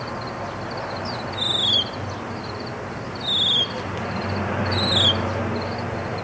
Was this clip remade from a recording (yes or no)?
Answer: no